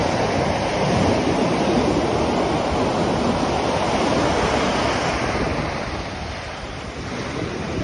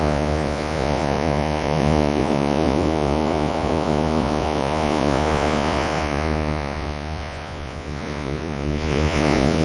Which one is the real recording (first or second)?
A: first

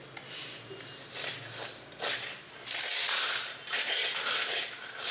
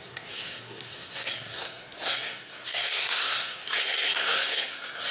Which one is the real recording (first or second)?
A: first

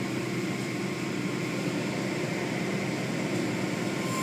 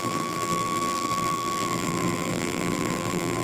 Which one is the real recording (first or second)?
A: first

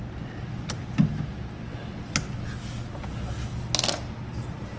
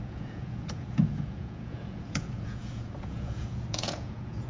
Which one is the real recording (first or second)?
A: first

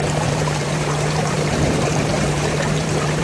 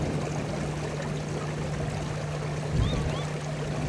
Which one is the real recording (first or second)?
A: second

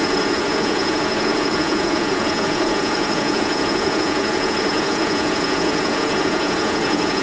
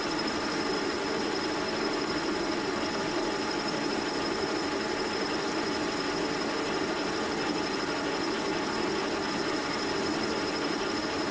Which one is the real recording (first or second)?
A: second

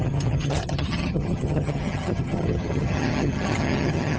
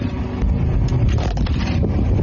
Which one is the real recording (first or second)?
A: second